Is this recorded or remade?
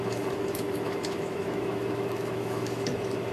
remade